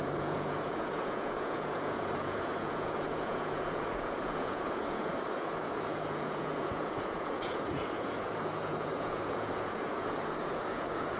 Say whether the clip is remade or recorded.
remade